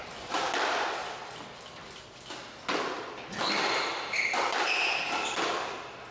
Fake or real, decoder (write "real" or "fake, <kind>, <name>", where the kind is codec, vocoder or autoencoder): real